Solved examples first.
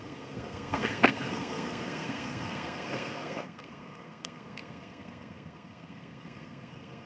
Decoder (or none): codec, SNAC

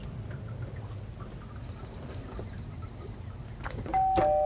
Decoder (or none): none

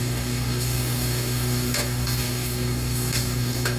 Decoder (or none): codec, DAC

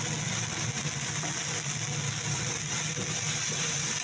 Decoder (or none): none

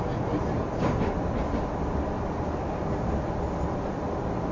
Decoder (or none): none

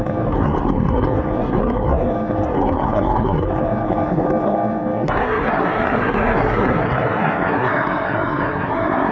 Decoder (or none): codec, SNAC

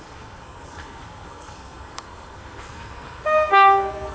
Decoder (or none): codec, SNAC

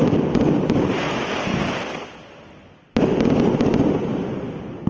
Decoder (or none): vocoder, BigVGAN v2